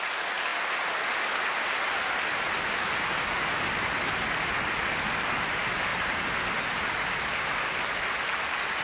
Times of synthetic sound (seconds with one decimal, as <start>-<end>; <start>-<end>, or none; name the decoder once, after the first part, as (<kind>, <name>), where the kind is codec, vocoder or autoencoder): none